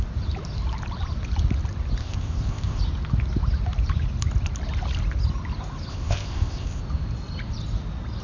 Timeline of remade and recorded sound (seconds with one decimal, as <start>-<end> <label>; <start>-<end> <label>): 0.0-2.0 recorded; 2.0-2.8 remade; 2.8-5.9 recorded; 5.9-6.8 remade; 6.8-8.2 recorded